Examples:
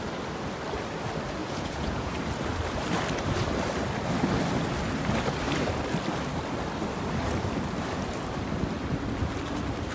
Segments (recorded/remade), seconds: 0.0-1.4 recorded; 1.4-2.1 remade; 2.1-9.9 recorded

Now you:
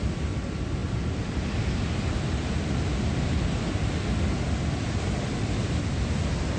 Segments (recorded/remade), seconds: 0.0-6.6 recorded